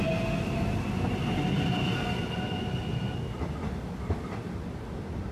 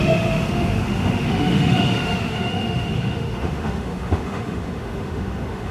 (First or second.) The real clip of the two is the first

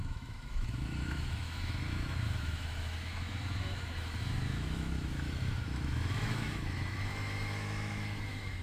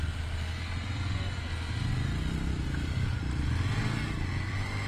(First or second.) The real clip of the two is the second